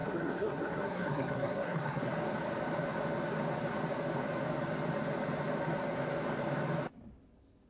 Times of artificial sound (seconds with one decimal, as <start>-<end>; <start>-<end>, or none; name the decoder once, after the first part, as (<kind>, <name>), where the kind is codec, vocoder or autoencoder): 0.0-2.1 (codec, SNAC)